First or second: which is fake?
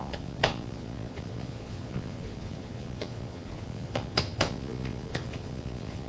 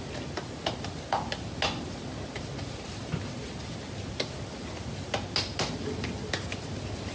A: first